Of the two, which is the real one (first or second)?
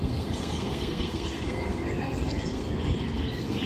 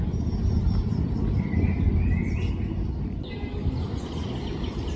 second